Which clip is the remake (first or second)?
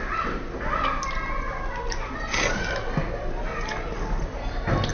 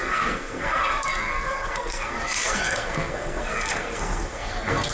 second